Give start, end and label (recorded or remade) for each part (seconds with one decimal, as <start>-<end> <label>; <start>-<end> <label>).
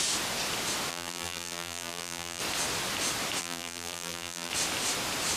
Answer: 0.0-0.9 recorded; 0.9-2.4 remade; 2.4-3.4 recorded; 3.4-4.5 remade; 4.5-5.4 recorded